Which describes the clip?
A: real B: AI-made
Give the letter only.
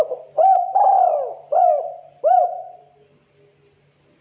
A